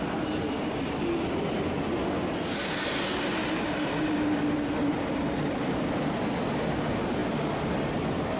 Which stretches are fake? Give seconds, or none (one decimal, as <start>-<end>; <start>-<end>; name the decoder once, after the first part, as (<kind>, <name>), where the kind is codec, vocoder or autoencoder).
none

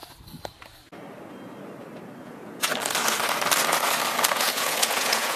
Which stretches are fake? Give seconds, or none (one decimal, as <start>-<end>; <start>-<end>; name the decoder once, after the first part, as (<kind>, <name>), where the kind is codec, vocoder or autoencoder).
2.2-2.7 (vocoder, Vocos); 4.3-5.4